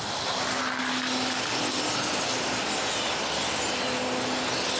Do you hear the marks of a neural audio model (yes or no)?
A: no